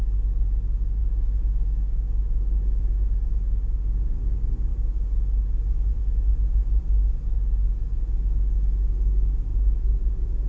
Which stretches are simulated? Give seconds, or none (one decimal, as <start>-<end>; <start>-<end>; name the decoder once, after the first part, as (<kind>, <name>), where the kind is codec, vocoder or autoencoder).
none